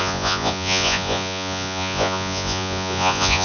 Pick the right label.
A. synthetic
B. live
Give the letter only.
A